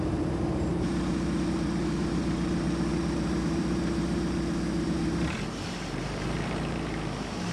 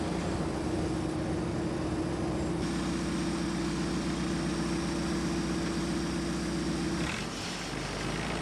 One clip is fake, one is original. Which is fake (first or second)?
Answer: first